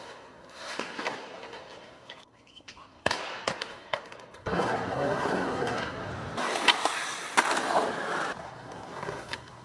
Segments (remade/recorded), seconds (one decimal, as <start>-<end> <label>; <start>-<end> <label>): 0.0-6.1 remade; 6.1-8.4 recorded; 8.4-9.6 remade